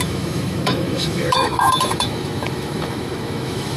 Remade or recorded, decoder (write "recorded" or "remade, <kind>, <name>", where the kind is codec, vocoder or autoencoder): remade, autoencoder, DAC-VAE